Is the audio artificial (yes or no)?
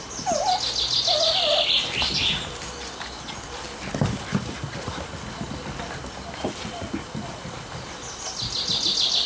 no